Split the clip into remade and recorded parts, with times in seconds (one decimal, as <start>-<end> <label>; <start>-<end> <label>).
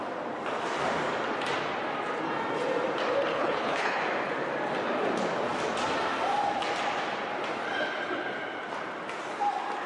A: 0.0-3.3 recorded; 3.3-4.0 remade; 4.0-9.9 recorded